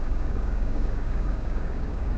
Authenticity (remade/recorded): remade